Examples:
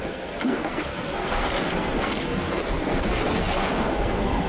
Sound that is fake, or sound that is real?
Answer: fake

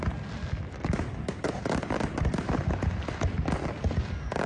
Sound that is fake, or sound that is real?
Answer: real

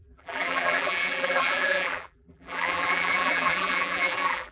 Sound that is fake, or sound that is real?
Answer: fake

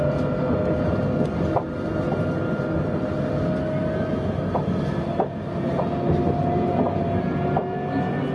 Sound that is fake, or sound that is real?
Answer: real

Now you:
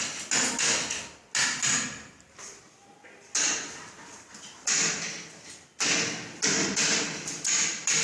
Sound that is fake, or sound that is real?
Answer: real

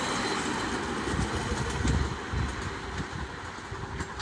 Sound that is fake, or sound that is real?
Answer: real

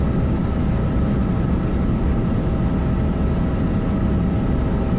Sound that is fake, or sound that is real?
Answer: real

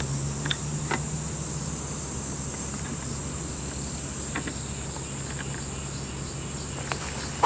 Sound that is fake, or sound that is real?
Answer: real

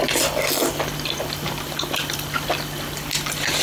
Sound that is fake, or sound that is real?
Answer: real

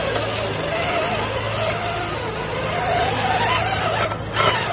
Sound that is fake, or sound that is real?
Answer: real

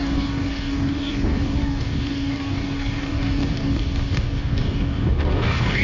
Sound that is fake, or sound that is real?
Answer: fake